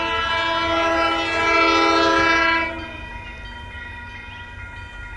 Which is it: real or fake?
real